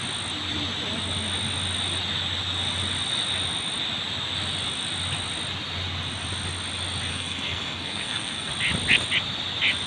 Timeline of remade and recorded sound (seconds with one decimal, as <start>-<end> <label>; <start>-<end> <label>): 0.0-7.1 recorded; 7.1-8.5 remade; 8.5-9.9 recorded